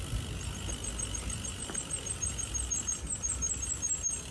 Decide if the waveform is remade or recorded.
recorded